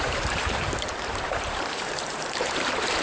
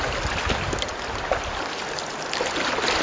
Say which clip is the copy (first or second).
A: first